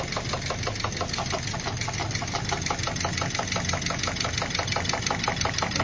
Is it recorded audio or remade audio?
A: recorded